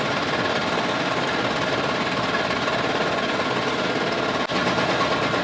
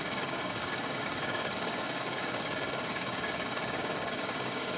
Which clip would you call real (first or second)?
first